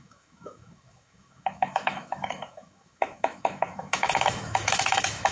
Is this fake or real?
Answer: fake